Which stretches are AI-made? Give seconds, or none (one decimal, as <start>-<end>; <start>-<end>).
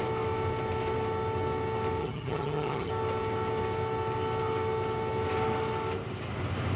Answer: 2.0-2.9